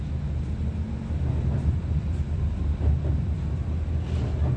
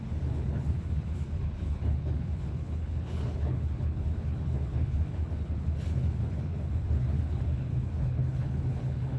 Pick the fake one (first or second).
second